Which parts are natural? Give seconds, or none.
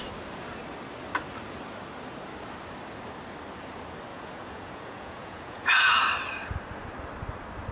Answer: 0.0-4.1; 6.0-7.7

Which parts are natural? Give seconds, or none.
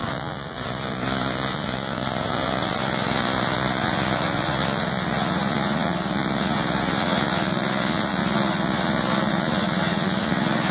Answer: none